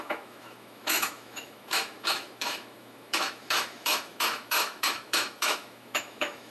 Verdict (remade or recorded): remade